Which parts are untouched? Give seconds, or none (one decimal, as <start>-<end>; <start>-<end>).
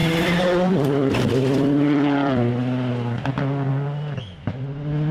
2.5-5.1